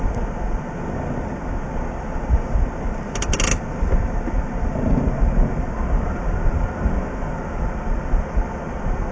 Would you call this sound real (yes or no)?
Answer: yes